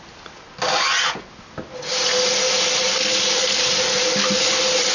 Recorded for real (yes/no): yes